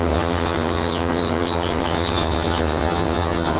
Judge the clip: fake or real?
fake